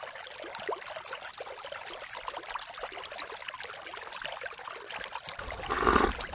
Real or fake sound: real